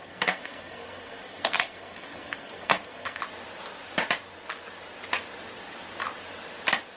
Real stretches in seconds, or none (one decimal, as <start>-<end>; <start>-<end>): 3.2-7.0